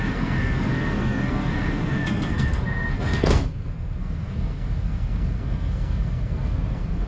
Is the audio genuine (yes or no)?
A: no